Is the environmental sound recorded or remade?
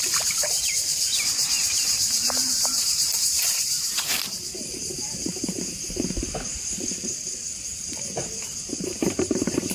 remade